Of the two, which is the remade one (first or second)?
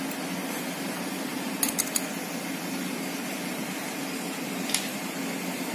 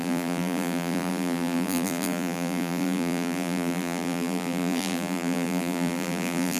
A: second